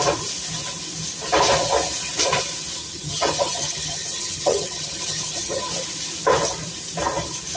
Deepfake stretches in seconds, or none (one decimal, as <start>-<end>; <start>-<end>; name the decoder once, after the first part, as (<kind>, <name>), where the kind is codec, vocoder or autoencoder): 2.8-5.7 (vocoder, HiFi-GAN)